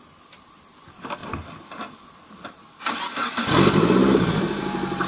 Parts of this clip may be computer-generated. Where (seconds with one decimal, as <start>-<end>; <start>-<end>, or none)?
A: none